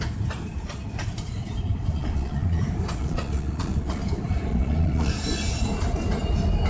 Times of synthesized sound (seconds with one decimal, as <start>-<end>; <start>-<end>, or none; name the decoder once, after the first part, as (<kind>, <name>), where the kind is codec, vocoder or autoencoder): 1.9-2.6 (vocoder, Vocos); 3.0-4.0; 4.5-5.1